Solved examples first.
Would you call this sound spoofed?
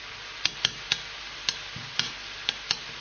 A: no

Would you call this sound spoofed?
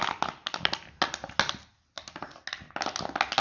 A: no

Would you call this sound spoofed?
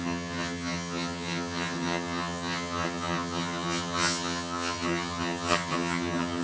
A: yes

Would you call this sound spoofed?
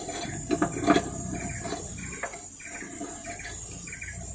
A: no